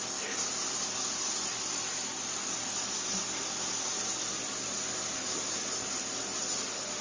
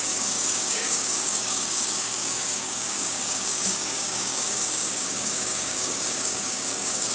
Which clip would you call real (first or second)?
first